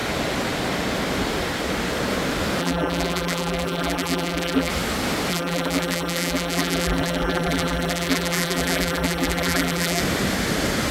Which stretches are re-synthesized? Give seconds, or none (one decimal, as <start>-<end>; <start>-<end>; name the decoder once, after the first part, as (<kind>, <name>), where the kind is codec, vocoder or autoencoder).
2.6-4.7 (vocoder, BigVGAN v2); 5.3-10.0